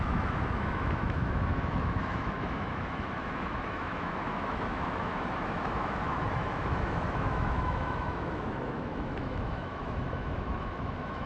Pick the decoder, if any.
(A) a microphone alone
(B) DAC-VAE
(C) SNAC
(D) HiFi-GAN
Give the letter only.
B